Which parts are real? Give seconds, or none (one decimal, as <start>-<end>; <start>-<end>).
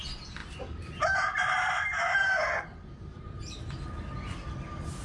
0.0-0.4; 3.4-5.0